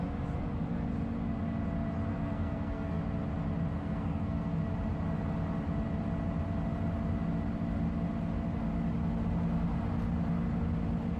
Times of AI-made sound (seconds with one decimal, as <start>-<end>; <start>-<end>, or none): 2.1-3.0; 3.8-4.6